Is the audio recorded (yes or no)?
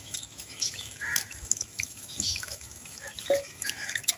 no